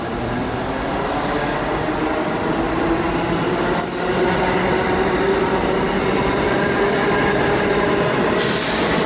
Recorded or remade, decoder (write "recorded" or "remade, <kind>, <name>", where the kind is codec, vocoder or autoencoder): recorded